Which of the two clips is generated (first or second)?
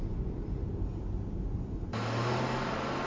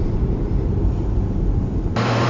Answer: second